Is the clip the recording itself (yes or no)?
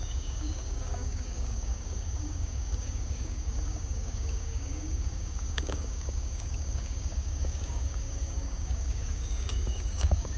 no